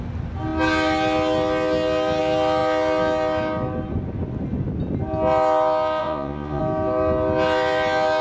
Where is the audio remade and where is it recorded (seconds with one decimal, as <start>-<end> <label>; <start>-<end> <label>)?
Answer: 0.0-6.0 recorded; 6.0-6.6 remade; 6.6-8.2 recorded